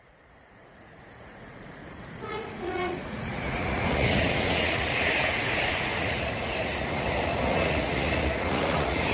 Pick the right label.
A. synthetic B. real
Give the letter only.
A